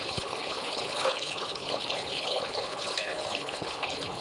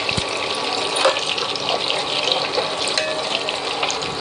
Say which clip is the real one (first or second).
second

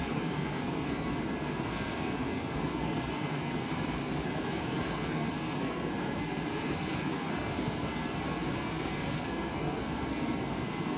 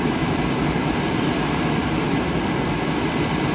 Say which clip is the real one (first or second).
second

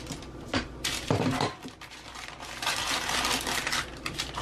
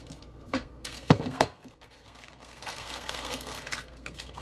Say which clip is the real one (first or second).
first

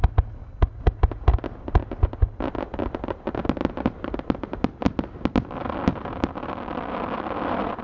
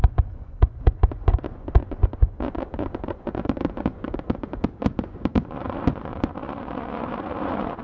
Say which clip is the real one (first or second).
first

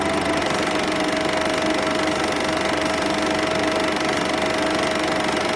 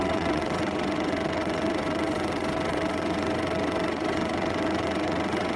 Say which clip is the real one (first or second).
first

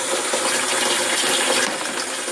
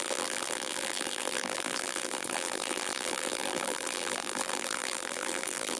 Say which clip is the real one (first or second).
first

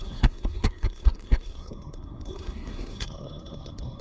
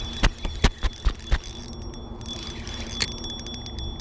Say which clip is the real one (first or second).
second